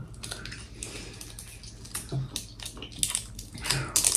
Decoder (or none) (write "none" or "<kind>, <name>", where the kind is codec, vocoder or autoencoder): none